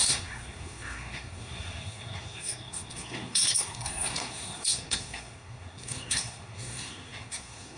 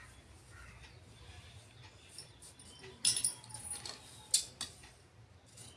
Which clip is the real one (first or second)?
second